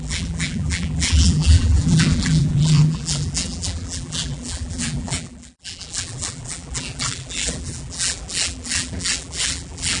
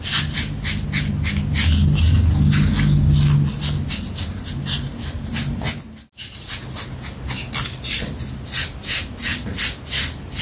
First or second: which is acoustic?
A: second